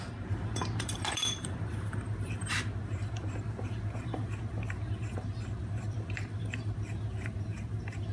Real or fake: fake